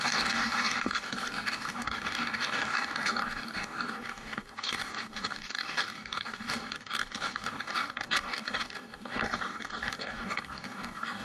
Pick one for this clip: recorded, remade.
remade